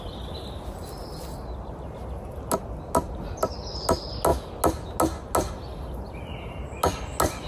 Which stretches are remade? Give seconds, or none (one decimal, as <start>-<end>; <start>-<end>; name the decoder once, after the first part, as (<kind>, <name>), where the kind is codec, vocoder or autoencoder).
none